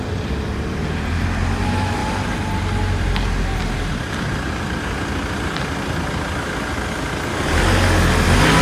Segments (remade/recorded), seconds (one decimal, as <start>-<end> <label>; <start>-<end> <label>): 0.0-8.6 recorded

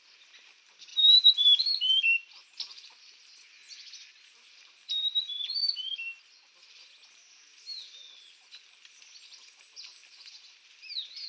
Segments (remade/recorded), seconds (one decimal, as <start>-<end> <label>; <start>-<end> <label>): 0.0-0.9 recorded; 0.9-1.7 remade; 1.7-11.3 recorded

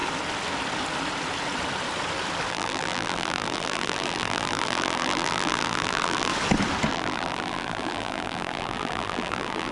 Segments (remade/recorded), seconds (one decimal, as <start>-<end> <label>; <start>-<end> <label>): 0.0-2.5 recorded; 2.5-6.3 remade; 6.3-6.9 recorded; 6.9-9.7 remade

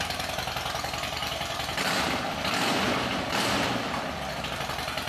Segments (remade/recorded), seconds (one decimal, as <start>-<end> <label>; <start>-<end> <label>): 0.0-1.2 recorded; 1.2-4.0 remade; 4.0-5.1 recorded

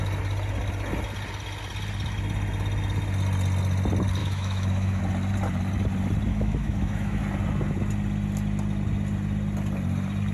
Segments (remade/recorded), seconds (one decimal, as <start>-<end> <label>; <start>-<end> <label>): 0.0-4.2 recorded; 4.2-5.0 remade; 5.0-6.3 recorded; 6.3-7.2 remade; 7.2-10.3 recorded

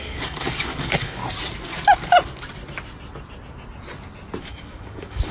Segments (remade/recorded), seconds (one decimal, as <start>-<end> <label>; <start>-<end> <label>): 0.0-1.2 remade; 1.2-4.4 recorded; 4.4-5.3 remade

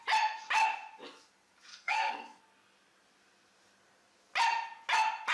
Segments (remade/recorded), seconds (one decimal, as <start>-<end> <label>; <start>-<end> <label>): 0.0-1.7 recorded; 1.7-2.4 remade; 2.4-5.3 recorded